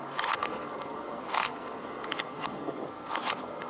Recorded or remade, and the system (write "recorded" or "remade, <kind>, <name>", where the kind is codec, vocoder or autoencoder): remade, codec, SNAC